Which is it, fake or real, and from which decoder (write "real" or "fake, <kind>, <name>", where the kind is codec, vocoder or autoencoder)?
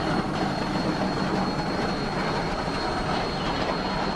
real